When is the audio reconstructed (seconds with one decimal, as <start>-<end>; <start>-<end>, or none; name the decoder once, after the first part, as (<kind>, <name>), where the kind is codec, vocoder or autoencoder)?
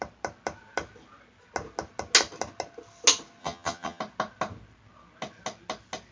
3.4-4.0 (vocoder, HiFi-GAN)